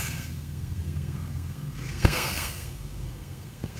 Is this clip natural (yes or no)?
no